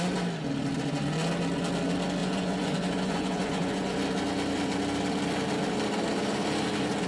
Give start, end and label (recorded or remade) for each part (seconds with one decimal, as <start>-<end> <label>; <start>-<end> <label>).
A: 0.0-2.2 recorded; 2.2-3.9 remade; 3.9-7.1 recorded